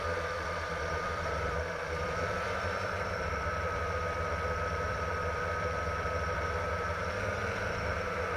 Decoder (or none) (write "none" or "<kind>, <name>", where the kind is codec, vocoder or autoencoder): vocoder, BigVGAN v2